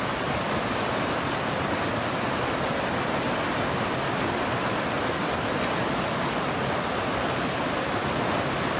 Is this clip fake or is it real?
real